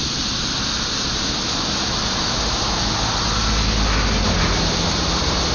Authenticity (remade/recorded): recorded